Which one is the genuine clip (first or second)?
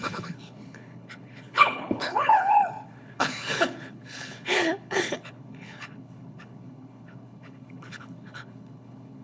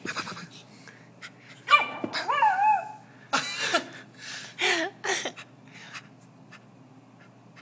second